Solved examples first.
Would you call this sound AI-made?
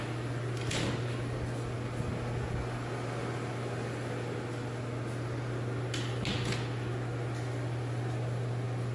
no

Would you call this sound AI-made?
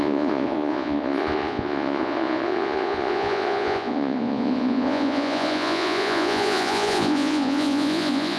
yes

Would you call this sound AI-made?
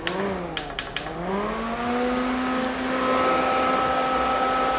no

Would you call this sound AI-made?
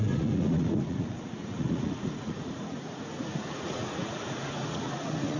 yes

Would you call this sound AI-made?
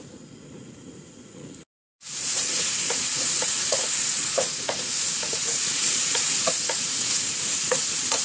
yes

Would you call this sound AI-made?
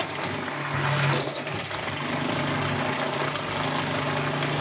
no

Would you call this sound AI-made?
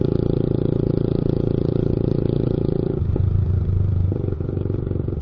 yes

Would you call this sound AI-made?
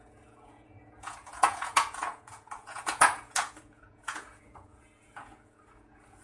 yes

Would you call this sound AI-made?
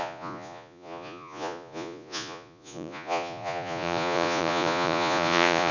yes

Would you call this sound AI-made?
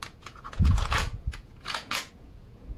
yes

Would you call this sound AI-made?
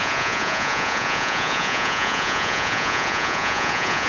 yes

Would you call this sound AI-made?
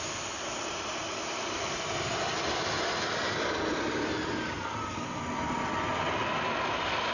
no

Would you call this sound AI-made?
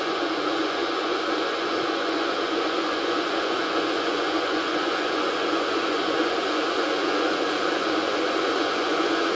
yes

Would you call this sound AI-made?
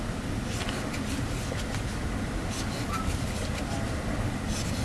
no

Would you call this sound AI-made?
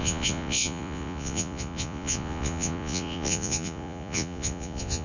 yes